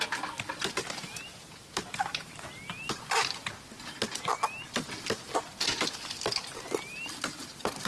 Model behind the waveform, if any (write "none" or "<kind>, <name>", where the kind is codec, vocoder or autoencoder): none